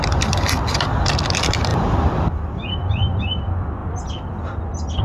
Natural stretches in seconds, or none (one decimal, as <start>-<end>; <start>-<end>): 0.0-1.7; 3.2-5.0